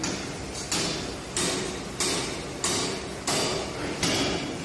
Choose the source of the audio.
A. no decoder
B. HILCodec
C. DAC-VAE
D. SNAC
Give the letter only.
A